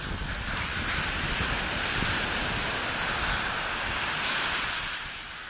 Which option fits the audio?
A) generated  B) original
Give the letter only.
B